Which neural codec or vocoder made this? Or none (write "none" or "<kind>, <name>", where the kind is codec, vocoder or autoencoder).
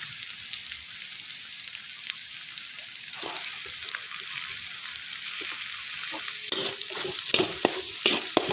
none